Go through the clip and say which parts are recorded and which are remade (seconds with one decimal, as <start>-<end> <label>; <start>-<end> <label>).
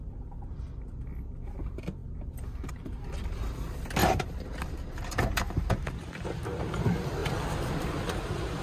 0.0-4.0 recorded; 4.0-6.1 remade; 6.1-8.6 recorded